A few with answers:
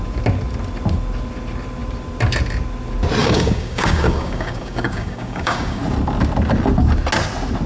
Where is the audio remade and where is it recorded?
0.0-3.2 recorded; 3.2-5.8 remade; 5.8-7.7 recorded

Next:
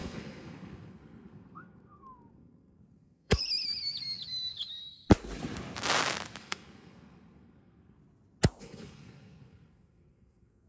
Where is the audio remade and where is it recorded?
0.0-3.4 remade; 3.4-6.4 recorded; 6.4-8.0 remade; 8.0-8.6 recorded; 8.6-10.7 remade

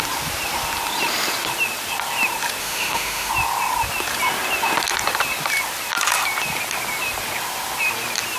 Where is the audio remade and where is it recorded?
0.0-2.6 recorded; 2.6-3.3 remade; 3.3-8.4 recorded